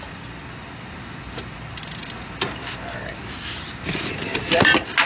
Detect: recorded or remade recorded